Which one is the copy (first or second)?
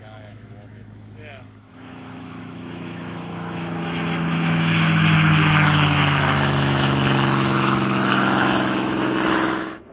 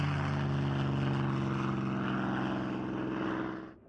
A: first